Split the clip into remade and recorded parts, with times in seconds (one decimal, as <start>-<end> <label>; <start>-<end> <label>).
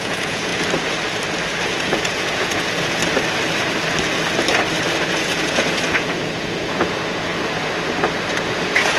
0.0-0.5 remade; 0.5-1.7 recorded; 1.7-3.0 remade; 3.0-5.1 recorded; 5.1-7.3 remade; 7.3-8.3 recorded; 8.3-9.0 remade